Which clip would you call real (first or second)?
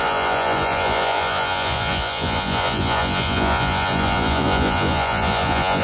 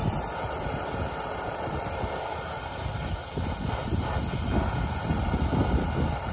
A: second